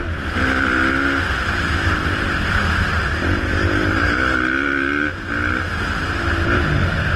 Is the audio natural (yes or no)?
yes